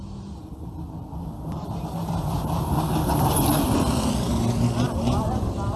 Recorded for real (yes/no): yes